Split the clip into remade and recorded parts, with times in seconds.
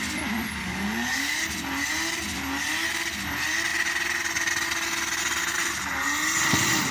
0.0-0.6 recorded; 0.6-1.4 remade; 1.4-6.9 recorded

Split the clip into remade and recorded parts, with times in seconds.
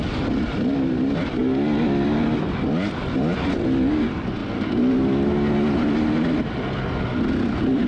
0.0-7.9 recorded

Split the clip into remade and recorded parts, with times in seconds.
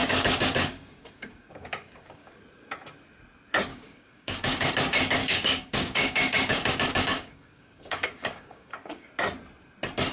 0.0-2.4 remade; 2.4-3.7 recorded; 3.7-4.7 remade; 4.7-5.2 recorded; 5.2-9.1 remade; 9.1-10.1 recorded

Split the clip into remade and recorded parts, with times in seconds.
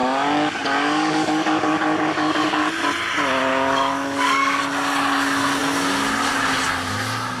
0.0-2.7 remade; 2.7-3.5 recorded; 3.5-4.6 remade; 4.6-7.4 recorded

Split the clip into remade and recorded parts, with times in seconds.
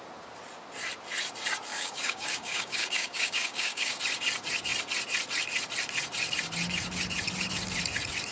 0.0-1.7 recorded; 1.7-4.0 remade; 4.0-8.3 recorded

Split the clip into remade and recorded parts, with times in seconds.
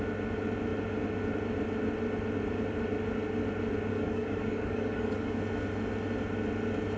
0.0-3.9 recorded; 3.9-5.4 remade; 5.4-7.0 recorded